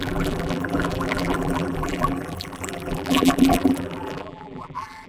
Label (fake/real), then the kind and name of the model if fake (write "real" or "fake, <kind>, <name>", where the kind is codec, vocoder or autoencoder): fake, vocoder, BigVGAN v2